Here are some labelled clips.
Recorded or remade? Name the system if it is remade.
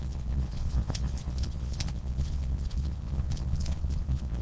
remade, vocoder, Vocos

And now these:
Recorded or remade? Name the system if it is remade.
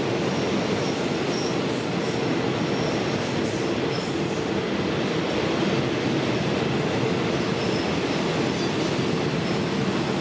recorded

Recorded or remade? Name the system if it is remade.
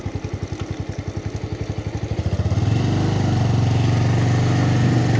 recorded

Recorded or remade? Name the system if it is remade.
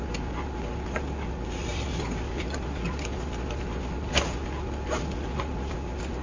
recorded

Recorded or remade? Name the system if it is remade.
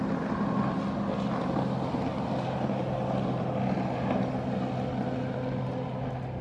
recorded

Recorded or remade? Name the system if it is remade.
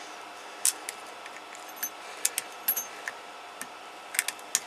recorded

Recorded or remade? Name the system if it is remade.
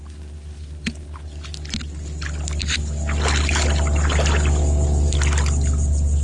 recorded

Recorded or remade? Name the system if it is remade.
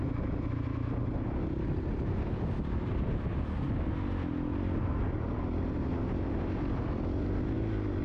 recorded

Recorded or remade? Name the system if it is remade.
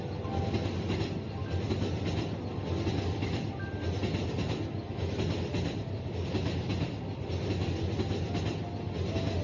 recorded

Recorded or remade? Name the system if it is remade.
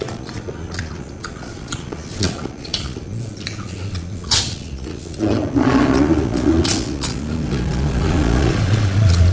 remade, vocoder, Vocos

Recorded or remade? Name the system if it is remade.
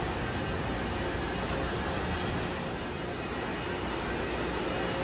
recorded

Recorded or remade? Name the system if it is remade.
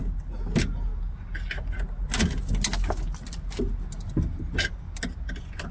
recorded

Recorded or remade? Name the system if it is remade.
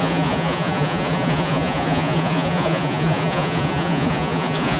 remade, vocoder, Vocos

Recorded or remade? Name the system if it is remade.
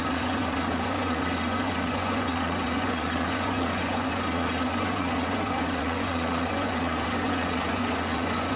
remade, vocoder, Vocos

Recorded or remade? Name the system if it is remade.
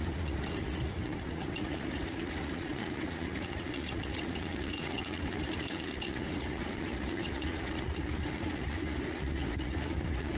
remade, vocoder, Vocos